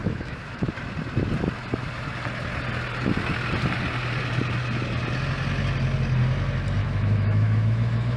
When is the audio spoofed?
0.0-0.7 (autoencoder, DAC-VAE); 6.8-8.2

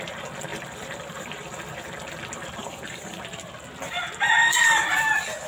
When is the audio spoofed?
0.5-1.6 (vocoder, BigVGAN v2); 2.6-3.2; 4.5-5.1

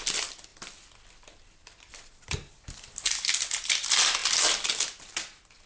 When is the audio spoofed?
none

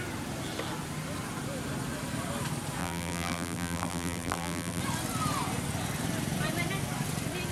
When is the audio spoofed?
2.8-4.8 (vocoder, BigVGAN v2)

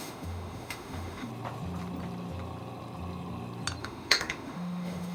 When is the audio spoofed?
0.0-1.3 (autoencoder, DAC-VAE); 3.8-5.1